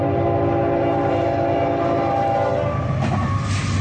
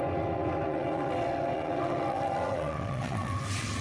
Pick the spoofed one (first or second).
second